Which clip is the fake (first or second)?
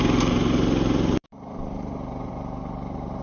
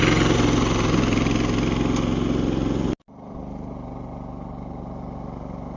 first